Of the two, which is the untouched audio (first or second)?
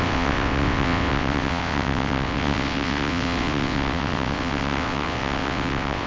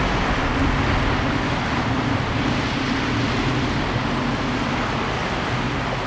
second